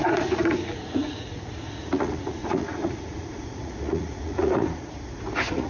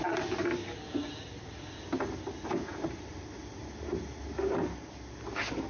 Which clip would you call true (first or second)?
second